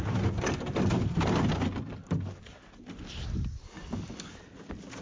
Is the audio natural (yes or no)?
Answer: yes